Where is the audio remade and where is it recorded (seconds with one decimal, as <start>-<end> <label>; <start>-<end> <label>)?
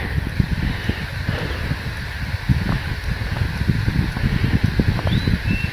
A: 0.0-2.5 recorded; 2.5-3.0 remade; 3.0-5.7 recorded